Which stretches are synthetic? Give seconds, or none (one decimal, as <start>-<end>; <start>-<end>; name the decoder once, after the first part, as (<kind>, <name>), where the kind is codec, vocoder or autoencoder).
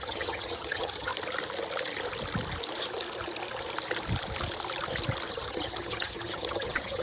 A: 0.0-1.1 (vocoder, HiFi-GAN); 5.3-7.0